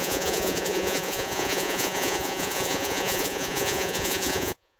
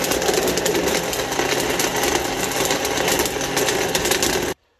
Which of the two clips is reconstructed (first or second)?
first